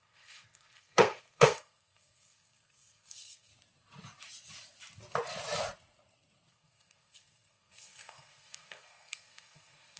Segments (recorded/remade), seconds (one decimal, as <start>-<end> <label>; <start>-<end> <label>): 0.0-3.5 remade; 3.5-6.5 recorded; 6.5-10.0 remade